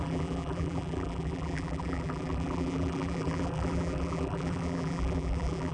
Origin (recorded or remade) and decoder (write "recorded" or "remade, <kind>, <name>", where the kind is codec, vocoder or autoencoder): remade, vocoder, BigVGAN v2